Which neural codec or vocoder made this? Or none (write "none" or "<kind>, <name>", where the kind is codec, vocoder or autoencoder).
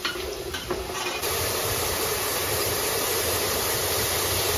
vocoder, BigVGAN v2